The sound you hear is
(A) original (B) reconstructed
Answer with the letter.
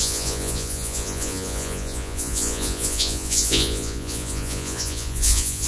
B